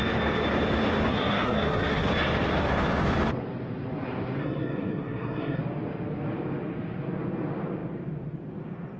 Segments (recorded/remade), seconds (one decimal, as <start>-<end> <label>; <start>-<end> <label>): 0.0-1.1 recorded; 1.1-2.1 remade; 2.1-4.4 recorded; 4.4-5.6 remade; 5.6-9.0 recorded